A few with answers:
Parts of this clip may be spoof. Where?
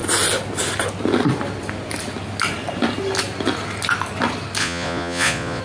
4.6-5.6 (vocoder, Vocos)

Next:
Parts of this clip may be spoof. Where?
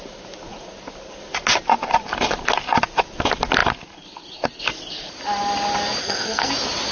6.0-6.5 (codec, SNAC)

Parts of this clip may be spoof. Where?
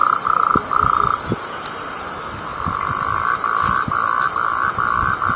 0.0-0.5 (vocoder, BigVGAN v2)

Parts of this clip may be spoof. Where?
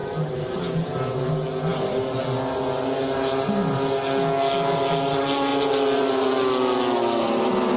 0.0-1.2 (vocoder, BigVGAN v2); 1.7-2.2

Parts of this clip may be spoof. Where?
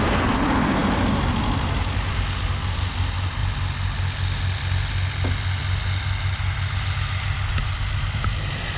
none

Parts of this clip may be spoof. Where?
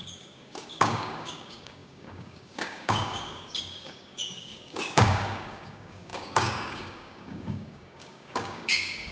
0.0-9.1 (codec, DAC)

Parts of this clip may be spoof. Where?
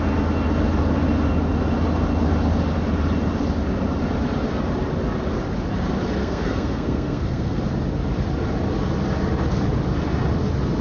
6.2-7.6 (codec, SNAC)